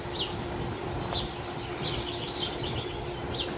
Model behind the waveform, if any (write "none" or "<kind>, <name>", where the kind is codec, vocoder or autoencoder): none